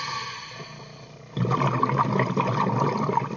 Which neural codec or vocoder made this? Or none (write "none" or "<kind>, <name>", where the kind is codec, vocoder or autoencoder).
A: none